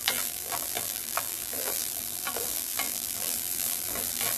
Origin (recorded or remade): remade